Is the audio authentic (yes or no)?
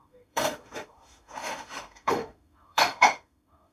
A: no